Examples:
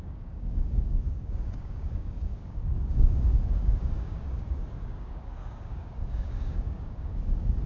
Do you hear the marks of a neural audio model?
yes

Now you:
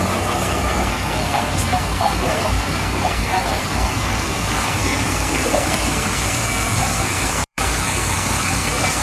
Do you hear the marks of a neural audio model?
yes